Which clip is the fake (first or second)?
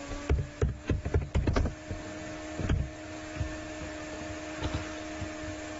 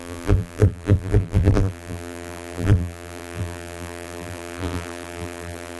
second